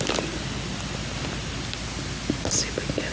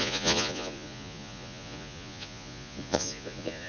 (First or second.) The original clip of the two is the first